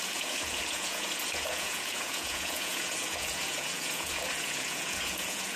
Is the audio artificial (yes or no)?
yes